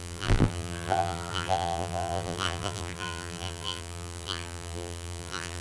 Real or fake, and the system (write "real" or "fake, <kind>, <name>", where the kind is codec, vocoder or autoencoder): fake, vocoder, BigVGAN v2